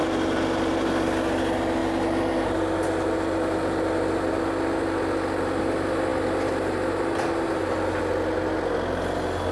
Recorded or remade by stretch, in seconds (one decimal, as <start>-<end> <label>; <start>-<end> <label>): 0.0-9.5 recorded